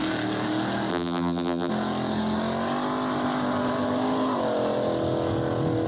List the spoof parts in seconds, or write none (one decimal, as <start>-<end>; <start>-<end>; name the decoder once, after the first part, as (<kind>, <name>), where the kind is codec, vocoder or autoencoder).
0.9-1.7 (vocoder, BigVGAN v2)